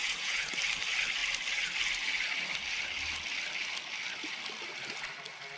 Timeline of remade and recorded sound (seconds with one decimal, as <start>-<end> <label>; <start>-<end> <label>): 0.0-0.5 remade; 0.5-5.6 recorded